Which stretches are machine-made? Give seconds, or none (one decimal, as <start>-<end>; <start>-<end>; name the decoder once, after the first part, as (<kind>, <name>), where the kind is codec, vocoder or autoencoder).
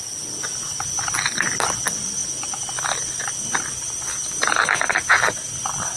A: none